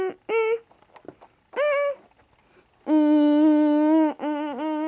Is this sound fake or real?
real